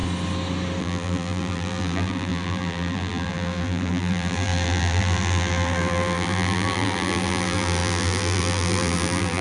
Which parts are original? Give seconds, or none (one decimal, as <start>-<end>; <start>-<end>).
0.0-0.8